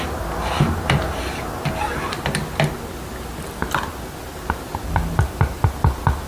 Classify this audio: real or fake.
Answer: real